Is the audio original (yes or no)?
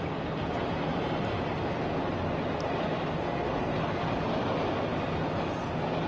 yes